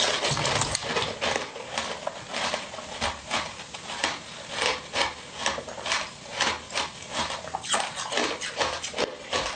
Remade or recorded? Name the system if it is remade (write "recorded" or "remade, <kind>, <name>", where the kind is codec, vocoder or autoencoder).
recorded